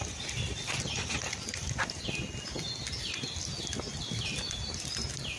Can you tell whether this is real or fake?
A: real